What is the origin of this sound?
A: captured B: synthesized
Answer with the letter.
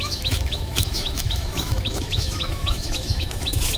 B